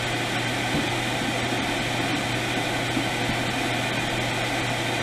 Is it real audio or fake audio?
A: real